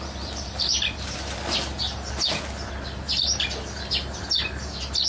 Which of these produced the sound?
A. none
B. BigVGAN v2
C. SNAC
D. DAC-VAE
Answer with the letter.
A